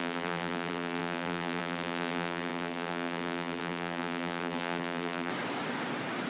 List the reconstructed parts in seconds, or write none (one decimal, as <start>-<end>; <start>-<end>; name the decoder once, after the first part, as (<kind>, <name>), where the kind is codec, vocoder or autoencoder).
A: 0.0-5.3 (vocoder, BigVGAN v2)

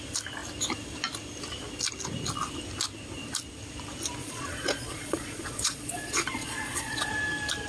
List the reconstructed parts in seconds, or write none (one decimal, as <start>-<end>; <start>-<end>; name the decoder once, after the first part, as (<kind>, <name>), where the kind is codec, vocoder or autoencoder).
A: 4.2-7.1 (vocoder, Vocos)

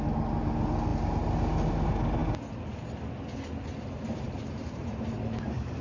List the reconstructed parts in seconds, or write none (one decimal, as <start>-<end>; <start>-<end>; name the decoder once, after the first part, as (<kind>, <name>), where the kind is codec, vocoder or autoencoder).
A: 3.7-5.0 (vocoder, BigVGAN v2)